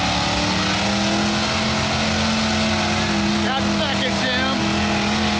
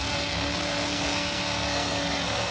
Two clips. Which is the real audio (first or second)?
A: first